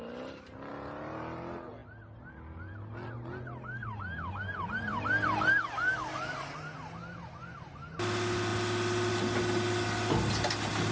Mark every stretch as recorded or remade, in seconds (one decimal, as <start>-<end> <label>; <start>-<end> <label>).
0.0-0.7 recorded; 0.7-1.4 remade; 1.4-10.9 recorded